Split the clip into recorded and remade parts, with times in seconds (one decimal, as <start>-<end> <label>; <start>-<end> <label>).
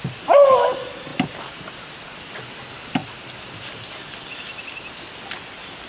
0.0-5.9 recorded